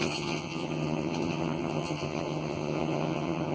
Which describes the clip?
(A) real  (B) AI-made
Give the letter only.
B